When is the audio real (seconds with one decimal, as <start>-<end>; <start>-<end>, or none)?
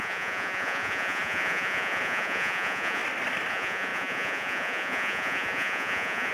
3.0-3.5